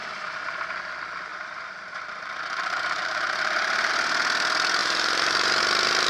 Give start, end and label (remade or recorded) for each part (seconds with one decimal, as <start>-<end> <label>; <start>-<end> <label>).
0.0-1.3 recorded; 1.3-3.9 remade; 3.9-4.8 recorded; 4.8-5.6 remade; 5.6-6.1 recorded